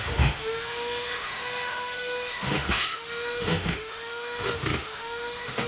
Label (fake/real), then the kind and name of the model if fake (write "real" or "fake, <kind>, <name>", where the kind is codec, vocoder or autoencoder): fake, autoencoder, DAC-VAE